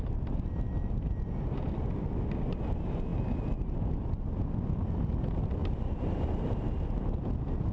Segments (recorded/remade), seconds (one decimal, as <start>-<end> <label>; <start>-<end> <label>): 0.0-7.7 recorded

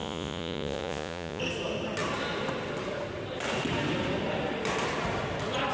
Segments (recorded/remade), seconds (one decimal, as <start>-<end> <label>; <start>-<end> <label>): 0.0-1.4 remade; 1.4-5.7 recorded

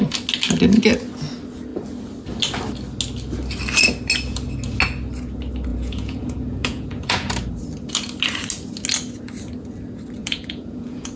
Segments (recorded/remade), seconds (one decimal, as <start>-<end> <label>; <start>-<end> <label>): 0.0-5.7 recorded; 5.7-7.3 remade; 7.3-10.2 recorded; 10.2-11.2 remade

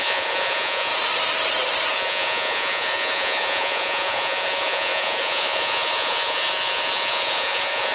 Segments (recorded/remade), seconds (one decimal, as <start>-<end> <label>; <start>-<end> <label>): 0.0-0.9 remade; 0.9-1.9 recorded; 1.9-7.9 remade

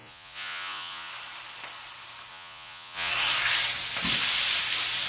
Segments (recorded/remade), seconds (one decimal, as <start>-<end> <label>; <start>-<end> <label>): 0.0-1.1 remade; 1.1-2.3 recorded; 2.3-3.1 remade; 3.1-5.1 recorded

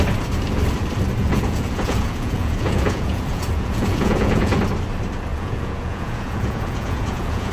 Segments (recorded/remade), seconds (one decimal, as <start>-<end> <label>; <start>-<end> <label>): 0.0-1.2 recorded; 1.2-4.6 remade; 4.6-5.3 recorded; 5.3-7.5 remade

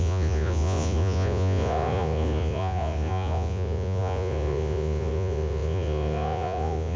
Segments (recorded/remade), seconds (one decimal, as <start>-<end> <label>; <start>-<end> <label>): 0.0-7.0 remade